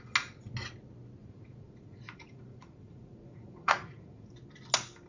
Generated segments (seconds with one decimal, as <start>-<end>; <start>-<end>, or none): 1.2-4.3